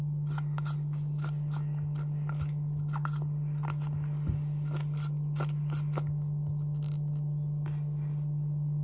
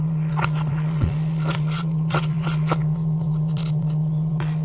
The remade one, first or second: second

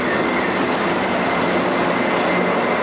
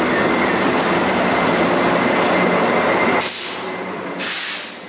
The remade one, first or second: second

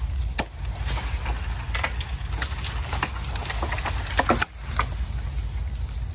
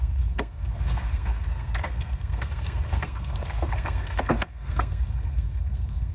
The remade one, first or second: second